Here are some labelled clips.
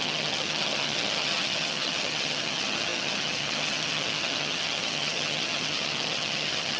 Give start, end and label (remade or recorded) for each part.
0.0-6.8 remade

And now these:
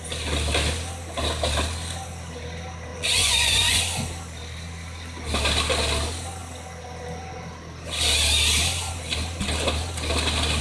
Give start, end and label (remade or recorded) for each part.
0.0-2.9 recorded; 2.9-3.8 remade; 3.8-10.6 recorded

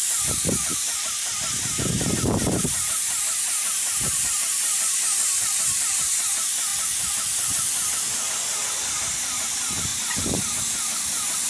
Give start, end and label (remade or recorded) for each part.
0.0-0.7 recorded; 0.7-2.8 remade; 2.8-3.6 recorded; 3.6-6.1 remade; 6.1-9.9 recorded; 9.9-10.6 remade; 10.6-11.5 recorded

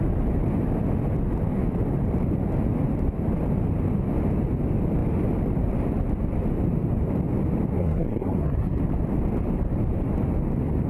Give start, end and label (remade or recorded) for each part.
0.0-7.8 recorded; 7.8-8.8 remade; 8.8-10.9 recorded

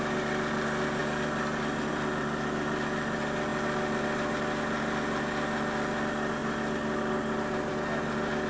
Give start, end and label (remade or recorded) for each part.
0.0-8.5 recorded

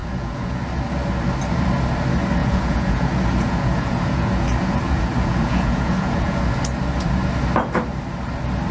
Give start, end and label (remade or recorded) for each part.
0.0-0.6 remade; 0.6-2.4 recorded; 2.4-6.4 remade; 6.4-8.7 recorded

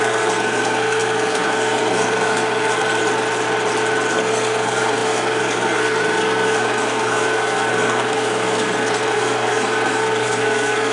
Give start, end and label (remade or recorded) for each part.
0.0-3.0 remade; 3.0-4.1 recorded; 4.1-10.9 remade

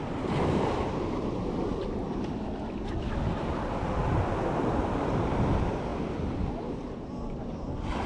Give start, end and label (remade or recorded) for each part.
0.0-8.1 recorded